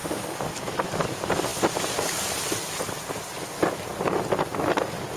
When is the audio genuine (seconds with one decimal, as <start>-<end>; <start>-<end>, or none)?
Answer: 0.5-5.2